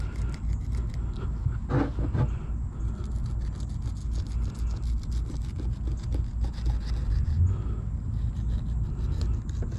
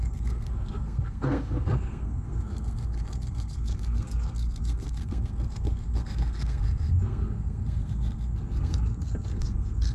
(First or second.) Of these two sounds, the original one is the first